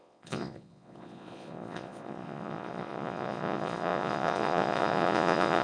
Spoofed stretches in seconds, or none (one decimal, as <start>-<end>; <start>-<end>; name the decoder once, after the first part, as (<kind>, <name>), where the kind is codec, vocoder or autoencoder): 0.0-5.6 (vocoder, Vocos)